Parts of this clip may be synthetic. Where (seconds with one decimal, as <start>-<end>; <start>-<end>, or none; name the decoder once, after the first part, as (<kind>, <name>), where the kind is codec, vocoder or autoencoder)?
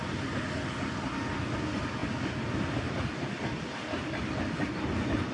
none